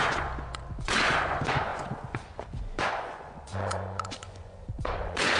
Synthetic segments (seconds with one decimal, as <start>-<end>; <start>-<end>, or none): 0.0-5.4